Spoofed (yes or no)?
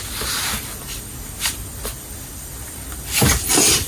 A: no